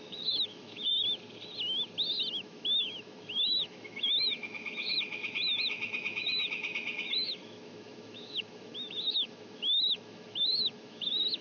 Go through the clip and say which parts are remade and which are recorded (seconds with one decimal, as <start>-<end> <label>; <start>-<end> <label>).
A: 0.0-0.9 remade; 0.9-2.3 recorded; 2.3-11.4 remade